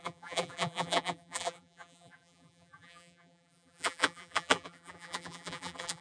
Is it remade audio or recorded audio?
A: remade